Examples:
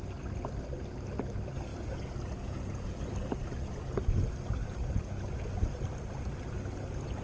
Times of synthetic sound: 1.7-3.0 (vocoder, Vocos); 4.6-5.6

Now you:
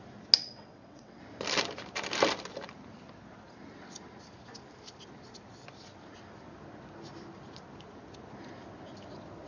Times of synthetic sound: 0.4-1.2 (vocoder, WaveNeXt)

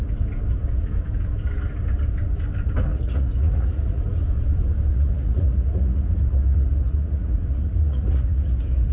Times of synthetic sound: 2.9-4.0 (vocoder, Vocos); 4.9-8.9

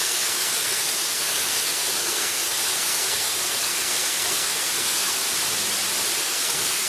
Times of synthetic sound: 0.0-5.2 (codec, SNAC); 6.2-6.9

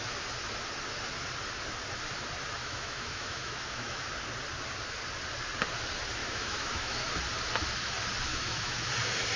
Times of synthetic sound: 2.6-4.1 (autoencoder, DAC-VAE); 6.2-7.0; 8.3-8.9

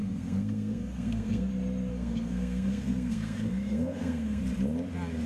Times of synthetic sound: 0.0-1.5 (codec, SNAC); 1.9-4.4

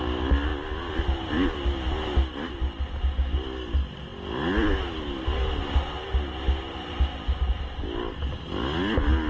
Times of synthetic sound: none

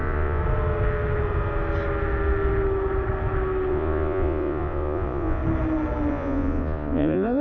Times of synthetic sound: 0.0-0.4 (vocoder, Vocos); 3.7-5.4; 6.1-7.4